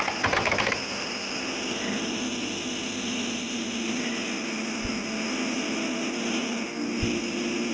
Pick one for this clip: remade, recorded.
recorded